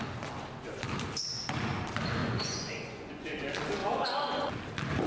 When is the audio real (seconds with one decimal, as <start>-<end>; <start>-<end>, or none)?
0.0-2.2; 3.4-3.8; 4.5-5.1